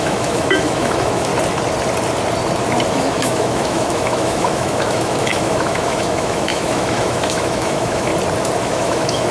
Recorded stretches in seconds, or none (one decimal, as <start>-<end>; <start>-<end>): 1.3-2.9; 8.1-8.6